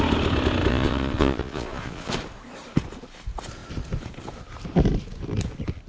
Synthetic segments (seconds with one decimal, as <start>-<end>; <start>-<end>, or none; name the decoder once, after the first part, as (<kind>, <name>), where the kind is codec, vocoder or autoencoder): 0.7-2.1 (vocoder, Vocos)